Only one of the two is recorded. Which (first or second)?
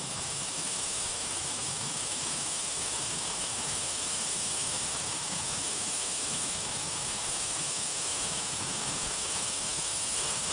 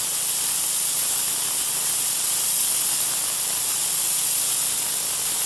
second